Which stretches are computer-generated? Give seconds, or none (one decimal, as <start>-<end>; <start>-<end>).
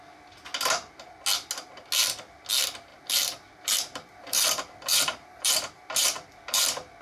2.9-7.0